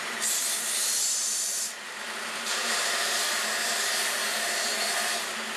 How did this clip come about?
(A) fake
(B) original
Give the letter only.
A